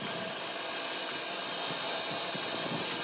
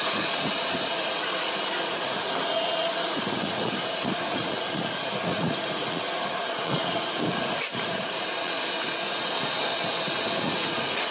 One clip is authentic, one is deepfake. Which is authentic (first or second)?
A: first